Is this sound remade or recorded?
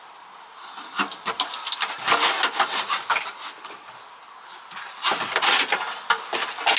recorded